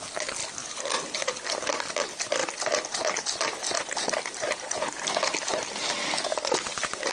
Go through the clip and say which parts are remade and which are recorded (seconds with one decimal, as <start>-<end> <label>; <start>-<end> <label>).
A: 0.0-7.1 recorded